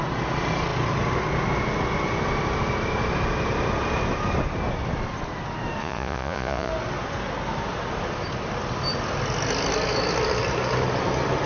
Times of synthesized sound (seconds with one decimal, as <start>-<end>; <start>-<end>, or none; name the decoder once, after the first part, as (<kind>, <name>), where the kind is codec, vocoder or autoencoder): 5.8-6.7 (vocoder, Vocos)